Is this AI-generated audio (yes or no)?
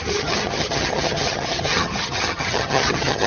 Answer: yes